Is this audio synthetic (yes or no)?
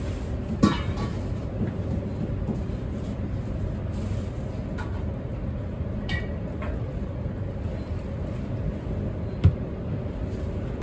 no